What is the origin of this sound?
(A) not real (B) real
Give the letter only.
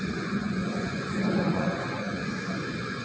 A